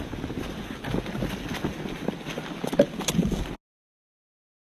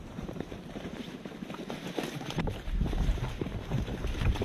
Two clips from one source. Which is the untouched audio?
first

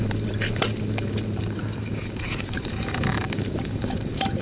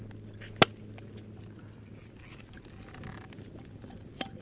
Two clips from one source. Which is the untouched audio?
second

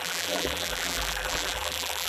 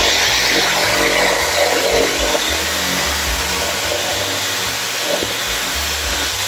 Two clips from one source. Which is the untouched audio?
second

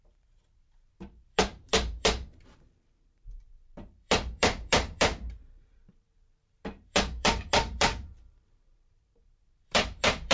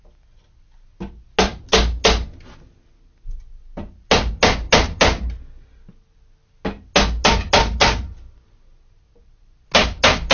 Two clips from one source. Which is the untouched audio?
second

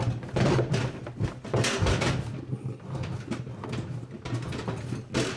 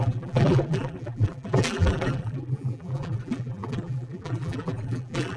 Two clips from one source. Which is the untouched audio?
first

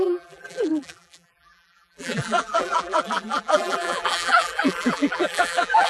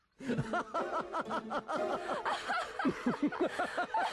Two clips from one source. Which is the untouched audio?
second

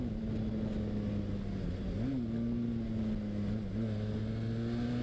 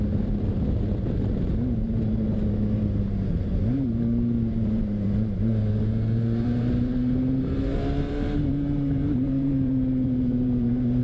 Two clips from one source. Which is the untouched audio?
first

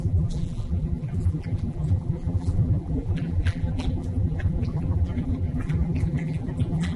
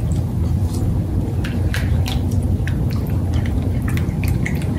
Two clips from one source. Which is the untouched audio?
second